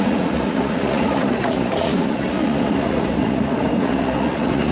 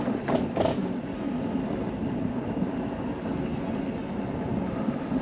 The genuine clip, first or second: second